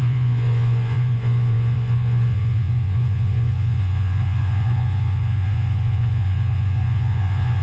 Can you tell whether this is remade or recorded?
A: remade